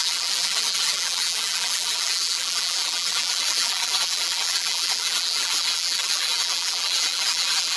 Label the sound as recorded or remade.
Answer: remade